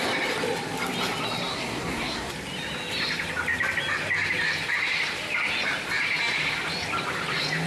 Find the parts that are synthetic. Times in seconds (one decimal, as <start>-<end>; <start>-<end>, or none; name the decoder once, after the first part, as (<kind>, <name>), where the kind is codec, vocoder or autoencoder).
1.5-2.3 (codec, SNAC)